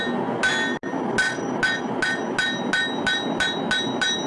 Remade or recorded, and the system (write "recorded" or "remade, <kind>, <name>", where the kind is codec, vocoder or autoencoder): recorded